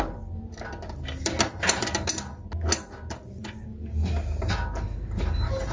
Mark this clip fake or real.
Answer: real